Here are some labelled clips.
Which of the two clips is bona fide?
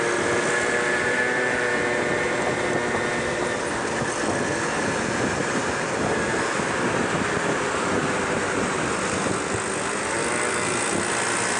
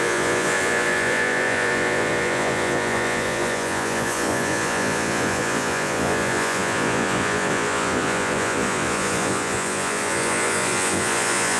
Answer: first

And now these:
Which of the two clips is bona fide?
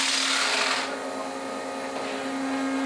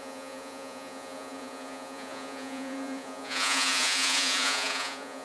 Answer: first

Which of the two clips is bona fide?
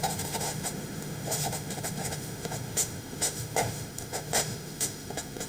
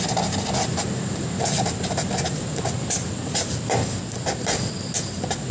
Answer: second